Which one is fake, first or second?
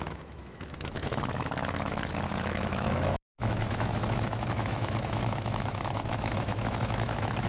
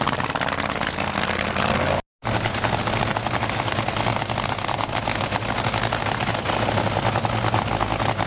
first